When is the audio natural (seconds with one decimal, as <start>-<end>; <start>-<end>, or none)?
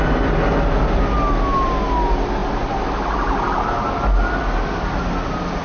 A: 0.0-5.6